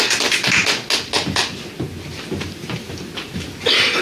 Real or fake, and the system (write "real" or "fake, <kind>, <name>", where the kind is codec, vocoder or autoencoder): real